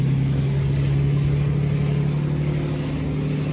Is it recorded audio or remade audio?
recorded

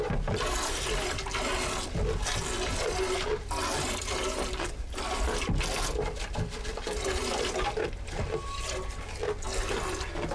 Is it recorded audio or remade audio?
recorded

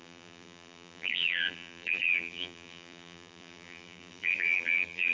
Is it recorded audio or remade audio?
remade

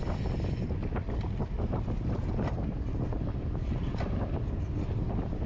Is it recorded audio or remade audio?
recorded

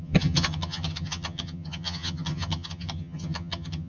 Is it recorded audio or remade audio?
remade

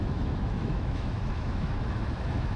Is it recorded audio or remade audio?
remade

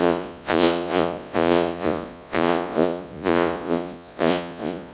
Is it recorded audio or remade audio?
remade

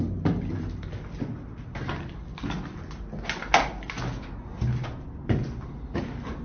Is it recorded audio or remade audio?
recorded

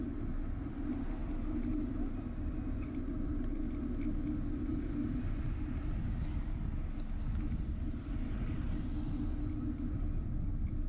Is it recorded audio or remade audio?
recorded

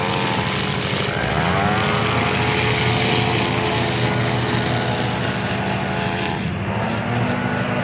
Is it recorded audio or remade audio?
recorded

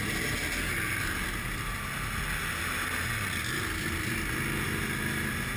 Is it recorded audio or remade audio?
recorded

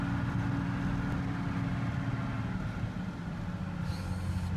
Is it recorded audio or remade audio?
recorded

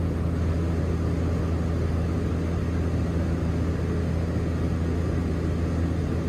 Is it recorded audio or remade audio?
recorded